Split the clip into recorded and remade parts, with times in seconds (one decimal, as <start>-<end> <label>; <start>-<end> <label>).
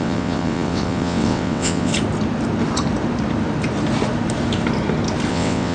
0.0-1.9 remade; 1.9-5.3 recorded; 5.3-5.7 remade